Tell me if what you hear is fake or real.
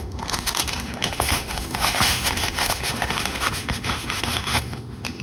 fake